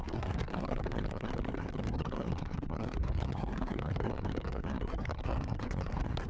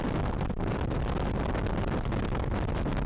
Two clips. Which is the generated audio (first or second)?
first